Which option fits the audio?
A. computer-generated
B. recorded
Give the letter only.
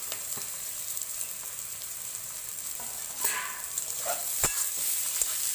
A